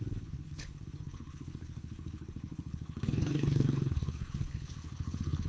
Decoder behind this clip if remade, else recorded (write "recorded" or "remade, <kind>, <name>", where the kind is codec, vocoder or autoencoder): remade, codec, HILCodec